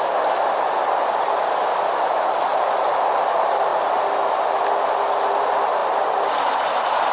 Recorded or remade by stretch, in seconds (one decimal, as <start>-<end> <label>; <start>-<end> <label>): 0.0-7.1 recorded